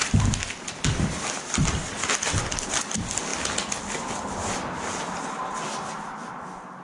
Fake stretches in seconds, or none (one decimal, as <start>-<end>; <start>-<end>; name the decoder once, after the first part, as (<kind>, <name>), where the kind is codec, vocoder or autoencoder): none